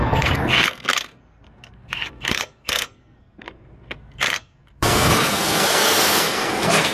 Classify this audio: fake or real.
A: fake